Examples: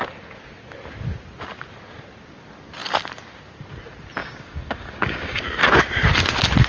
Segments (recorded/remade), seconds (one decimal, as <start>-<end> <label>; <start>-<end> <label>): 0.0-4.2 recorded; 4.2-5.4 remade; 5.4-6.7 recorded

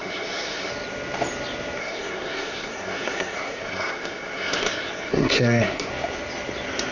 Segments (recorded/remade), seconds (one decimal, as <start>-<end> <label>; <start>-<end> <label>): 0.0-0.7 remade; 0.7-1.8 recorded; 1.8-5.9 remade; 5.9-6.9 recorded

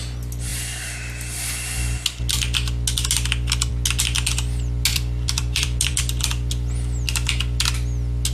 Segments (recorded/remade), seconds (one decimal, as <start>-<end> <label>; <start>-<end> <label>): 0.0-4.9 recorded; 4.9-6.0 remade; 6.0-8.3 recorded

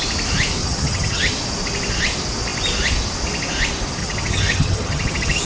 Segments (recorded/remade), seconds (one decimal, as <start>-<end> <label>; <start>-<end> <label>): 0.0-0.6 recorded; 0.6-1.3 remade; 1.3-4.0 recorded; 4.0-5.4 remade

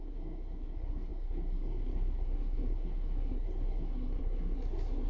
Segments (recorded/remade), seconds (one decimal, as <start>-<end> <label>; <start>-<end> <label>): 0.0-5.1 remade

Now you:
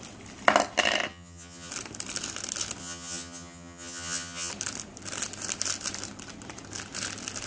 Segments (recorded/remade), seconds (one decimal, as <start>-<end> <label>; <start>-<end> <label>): 0.0-1.1 recorded; 1.1-1.7 remade; 1.7-2.8 recorded; 2.8-4.5 remade; 4.5-7.5 recorded